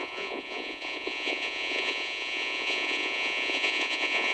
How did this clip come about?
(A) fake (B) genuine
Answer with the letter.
A